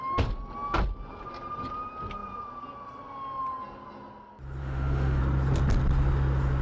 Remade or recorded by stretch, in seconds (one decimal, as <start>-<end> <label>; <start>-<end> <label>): 0.0-4.6 recorded; 4.6-5.2 remade; 5.2-6.6 recorded